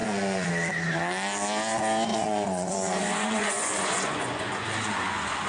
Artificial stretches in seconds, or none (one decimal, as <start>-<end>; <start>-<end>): 0.0-0.5; 2.1-5.5